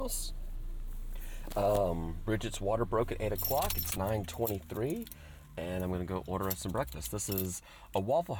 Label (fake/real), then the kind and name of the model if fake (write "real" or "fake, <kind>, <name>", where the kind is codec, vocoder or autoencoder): real